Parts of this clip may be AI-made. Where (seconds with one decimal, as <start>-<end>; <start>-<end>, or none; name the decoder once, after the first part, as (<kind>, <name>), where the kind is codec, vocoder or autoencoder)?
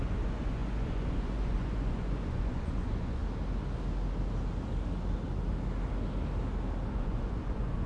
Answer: 0.0-3.2 (vocoder, Vocos); 6.9-7.9